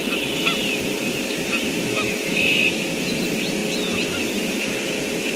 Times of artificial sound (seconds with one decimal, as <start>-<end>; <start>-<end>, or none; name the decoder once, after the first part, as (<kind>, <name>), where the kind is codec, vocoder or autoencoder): none